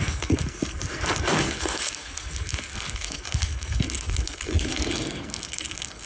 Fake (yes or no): yes